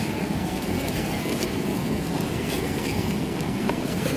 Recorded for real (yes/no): no